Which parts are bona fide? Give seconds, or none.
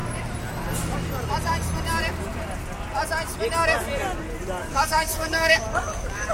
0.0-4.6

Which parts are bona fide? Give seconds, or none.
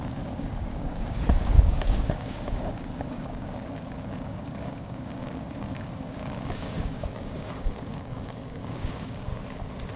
9.3-10.0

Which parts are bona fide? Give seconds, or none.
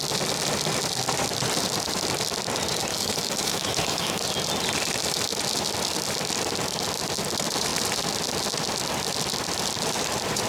0.0-2.9; 4.2-10.5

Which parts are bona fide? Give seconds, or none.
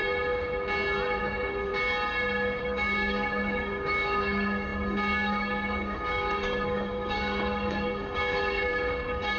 0.0-1.2; 1.7-2.6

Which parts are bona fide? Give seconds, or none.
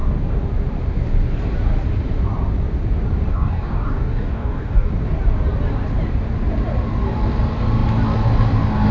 0.0-3.3; 4.9-8.9